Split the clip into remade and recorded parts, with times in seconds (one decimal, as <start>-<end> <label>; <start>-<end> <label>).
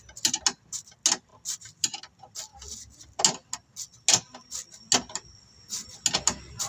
0.0-6.7 recorded